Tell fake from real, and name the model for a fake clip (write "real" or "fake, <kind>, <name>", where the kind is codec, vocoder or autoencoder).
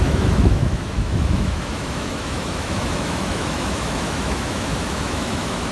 fake, autoencoder, DAC-VAE